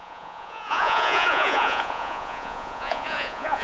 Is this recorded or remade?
remade